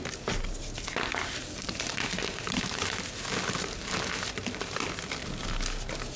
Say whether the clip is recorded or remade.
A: recorded